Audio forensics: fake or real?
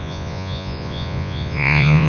fake